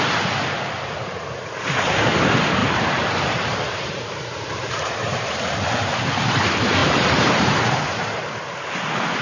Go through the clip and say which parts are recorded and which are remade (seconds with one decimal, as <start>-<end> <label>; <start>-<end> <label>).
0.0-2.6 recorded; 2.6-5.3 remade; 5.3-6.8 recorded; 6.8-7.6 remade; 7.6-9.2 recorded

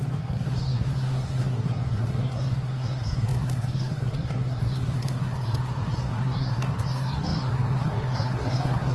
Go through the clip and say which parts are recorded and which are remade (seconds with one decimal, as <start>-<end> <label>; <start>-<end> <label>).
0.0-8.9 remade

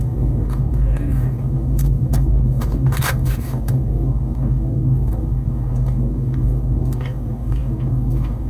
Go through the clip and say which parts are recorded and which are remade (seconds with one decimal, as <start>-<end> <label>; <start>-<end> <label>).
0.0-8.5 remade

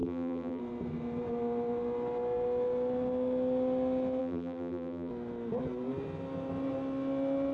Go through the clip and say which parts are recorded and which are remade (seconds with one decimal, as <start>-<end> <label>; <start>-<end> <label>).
0.0-0.6 remade; 0.6-4.2 recorded; 4.2-5.1 remade; 5.1-7.5 recorded

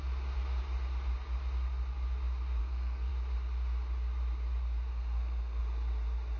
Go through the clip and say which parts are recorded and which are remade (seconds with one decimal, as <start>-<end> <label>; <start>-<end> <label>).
0.0-2.6 recorded; 2.6-3.1 remade; 3.1-4.9 recorded; 4.9-5.6 remade; 5.6-6.4 recorded

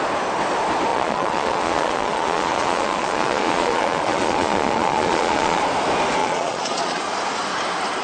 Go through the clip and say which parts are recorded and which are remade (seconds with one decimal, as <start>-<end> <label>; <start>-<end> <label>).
0.0-0.9 recorded; 0.9-5.6 remade; 5.6-6.2 recorded; 6.2-7.0 remade; 7.0-8.0 recorded

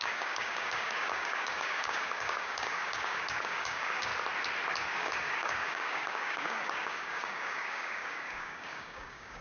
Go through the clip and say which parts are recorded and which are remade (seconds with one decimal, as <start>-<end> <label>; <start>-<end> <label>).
0.0-4.1 remade; 4.1-4.7 recorded; 4.7-9.4 remade